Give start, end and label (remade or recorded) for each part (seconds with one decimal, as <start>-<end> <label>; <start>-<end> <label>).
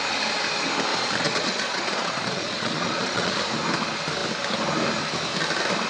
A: 0.0-0.9 recorded; 0.9-3.4 remade; 3.4-5.9 recorded